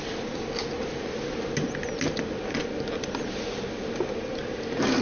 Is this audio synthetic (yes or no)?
no